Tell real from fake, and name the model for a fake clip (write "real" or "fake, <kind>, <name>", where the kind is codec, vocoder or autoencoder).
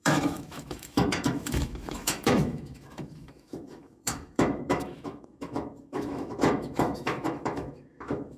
fake, autoencoder, DAC-VAE